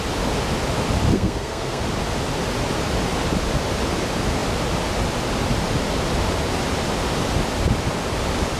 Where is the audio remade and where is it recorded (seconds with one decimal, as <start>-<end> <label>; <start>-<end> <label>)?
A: 0.0-1.1 recorded; 1.1-1.8 remade; 1.8-8.6 recorded